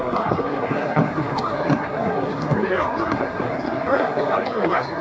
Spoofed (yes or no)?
yes